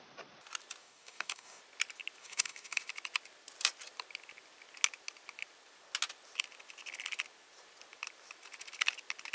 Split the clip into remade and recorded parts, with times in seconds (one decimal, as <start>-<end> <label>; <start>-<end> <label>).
0.0-0.8 recorded; 0.8-1.6 remade; 1.6-2.2 recorded; 2.2-2.9 remade; 2.9-9.3 recorded

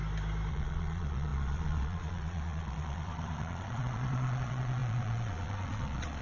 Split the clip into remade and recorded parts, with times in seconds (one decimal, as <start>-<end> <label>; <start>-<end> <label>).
0.0-0.5 recorded; 0.5-6.2 remade

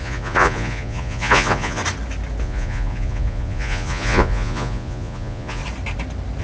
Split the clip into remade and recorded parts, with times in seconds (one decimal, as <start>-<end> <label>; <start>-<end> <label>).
0.0-1.8 remade; 1.8-2.4 recorded; 2.4-5.6 remade; 5.6-6.4 recorded

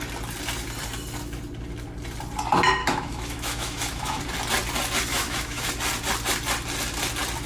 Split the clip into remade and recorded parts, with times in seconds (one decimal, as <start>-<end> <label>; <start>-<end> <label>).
0.0-2.8 recorded; 2.8-4.2 remade; 4.2-5.1 recorded; 5.1-5.7 remade; 5.7-7.5 recorded